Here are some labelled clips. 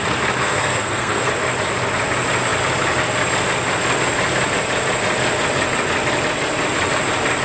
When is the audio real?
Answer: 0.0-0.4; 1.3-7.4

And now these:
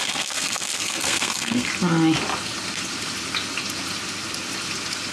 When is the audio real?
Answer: 1.7-5.1

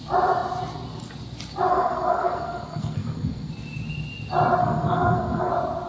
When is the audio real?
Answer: 0.0-1.7; 3.5-4.6; 5.5-5.9

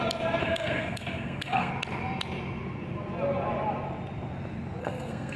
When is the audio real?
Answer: 0.0-0.4; 1.7-4.8

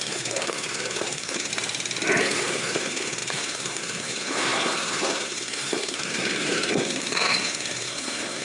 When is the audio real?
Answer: 1.5-2.2

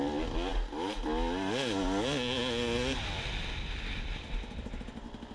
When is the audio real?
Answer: 0.0-5.3

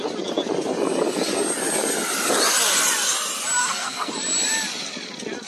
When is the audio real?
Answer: 0.0-3.6; 4.1-5.5

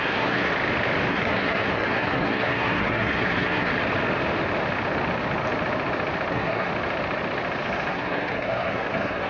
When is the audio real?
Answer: 0.5-1.1; 3.7-6.3; 6.7-7.9